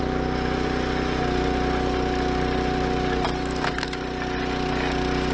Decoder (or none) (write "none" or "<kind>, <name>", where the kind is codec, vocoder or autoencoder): none